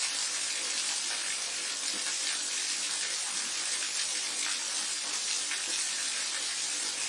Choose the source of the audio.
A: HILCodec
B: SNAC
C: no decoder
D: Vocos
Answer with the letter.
C